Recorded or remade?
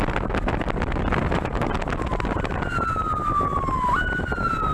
recorded